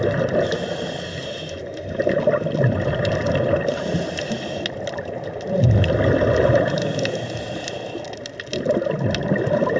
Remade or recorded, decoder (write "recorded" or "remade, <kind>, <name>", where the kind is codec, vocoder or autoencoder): recorded